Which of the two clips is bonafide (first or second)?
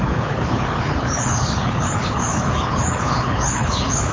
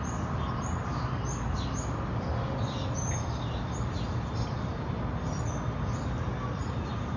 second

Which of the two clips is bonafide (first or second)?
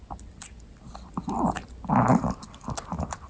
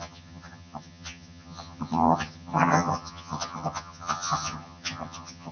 first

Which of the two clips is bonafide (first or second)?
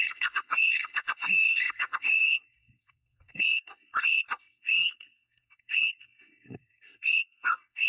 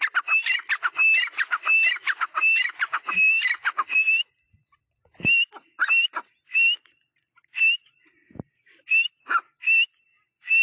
second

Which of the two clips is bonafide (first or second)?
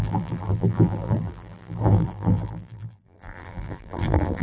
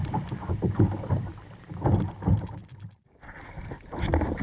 second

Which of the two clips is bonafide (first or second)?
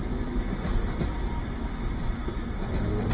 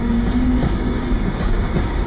first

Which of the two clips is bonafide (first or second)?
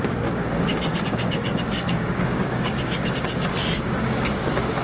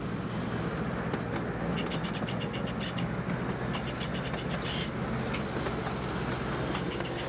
second